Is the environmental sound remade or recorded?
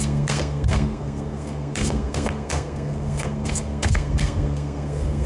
remade